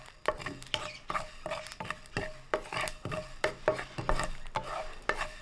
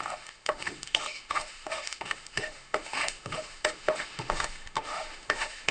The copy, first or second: second